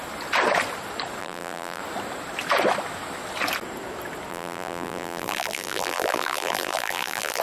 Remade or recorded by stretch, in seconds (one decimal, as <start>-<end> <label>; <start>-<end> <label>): 0.0-1.2 recorded; 1.2-1.8 remade; 1.8-4.3 recorded; 4.3-7.4 remade